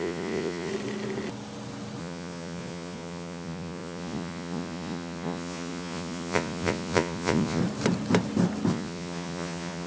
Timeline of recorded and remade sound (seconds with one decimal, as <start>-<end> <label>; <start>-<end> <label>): 0.0-0.7 remade; 0.7-2.0 recorded; 2.0-7.6 remade; 7.6-8.7 recorded; 8.7-9.9 remade